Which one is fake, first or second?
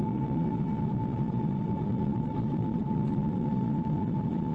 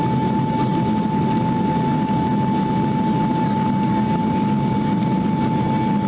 first